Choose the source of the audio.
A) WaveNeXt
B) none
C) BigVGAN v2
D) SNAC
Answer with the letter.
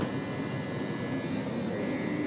B